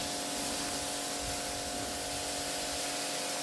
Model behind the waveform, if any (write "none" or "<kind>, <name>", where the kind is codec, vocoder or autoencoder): none